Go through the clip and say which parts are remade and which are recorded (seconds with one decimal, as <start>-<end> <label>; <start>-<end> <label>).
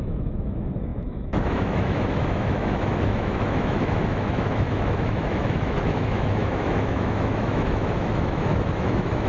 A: 0.0-9.3 remade